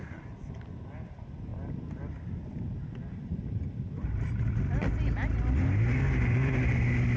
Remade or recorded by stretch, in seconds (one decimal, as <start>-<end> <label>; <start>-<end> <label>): 0.0-1.5 remade; 1.5-2.0 recorded; 2.0-7.2 remade